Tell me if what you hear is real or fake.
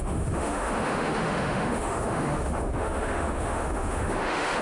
fake